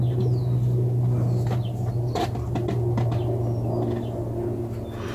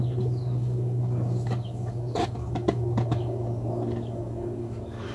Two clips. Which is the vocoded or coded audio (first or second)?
second